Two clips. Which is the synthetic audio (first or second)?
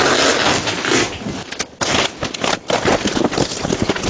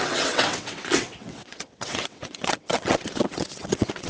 second